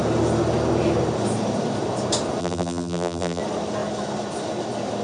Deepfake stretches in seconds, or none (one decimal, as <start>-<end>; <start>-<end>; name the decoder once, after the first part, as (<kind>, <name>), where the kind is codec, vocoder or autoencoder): 2.4-3.4 (vocoder, BigVGAN v2)